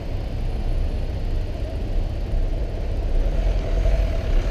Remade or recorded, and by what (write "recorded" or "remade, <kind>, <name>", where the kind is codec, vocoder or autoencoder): recorded